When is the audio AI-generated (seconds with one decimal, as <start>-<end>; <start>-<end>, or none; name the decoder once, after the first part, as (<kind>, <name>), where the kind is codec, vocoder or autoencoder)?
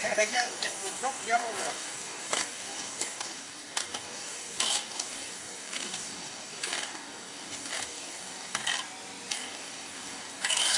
0.0-8.7 (codec, DAC); 9.3-10.8